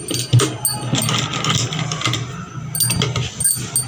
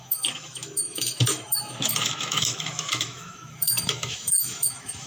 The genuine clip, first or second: first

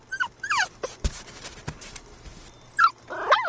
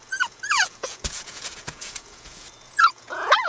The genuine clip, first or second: first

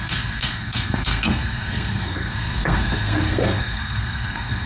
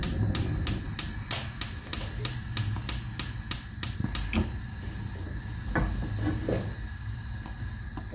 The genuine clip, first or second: second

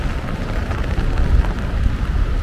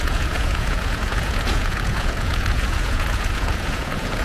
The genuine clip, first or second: first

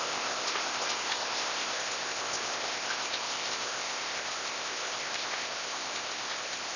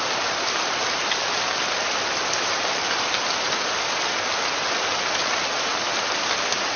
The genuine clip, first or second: second